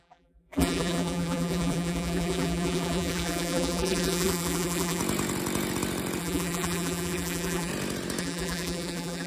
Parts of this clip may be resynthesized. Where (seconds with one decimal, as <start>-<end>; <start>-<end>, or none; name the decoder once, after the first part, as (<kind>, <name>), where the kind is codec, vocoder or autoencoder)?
0.0-5.0 (vocoder, BigVGAN v2); 6.2-7.7; 8.2-9.3